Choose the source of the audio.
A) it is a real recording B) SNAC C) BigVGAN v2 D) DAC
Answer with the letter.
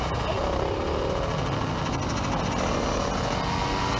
A